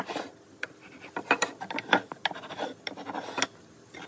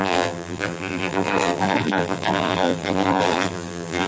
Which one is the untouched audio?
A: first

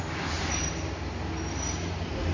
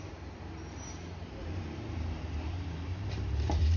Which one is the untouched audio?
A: first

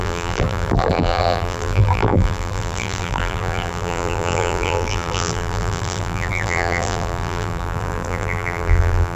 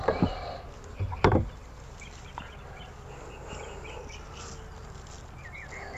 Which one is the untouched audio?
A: second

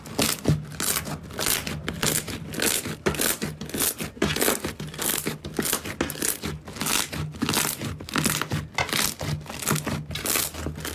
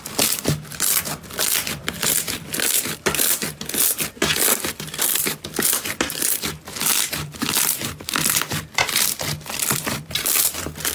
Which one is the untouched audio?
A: first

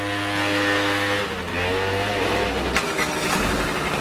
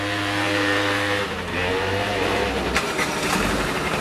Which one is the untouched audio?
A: first